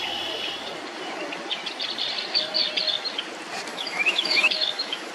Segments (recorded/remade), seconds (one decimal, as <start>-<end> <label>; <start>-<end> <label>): 0.0-3.7 recorded; 3.7-5.1 remade